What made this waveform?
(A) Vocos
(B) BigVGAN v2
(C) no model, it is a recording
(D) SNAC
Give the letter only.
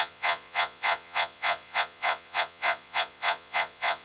A